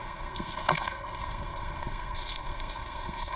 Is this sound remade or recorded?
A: remade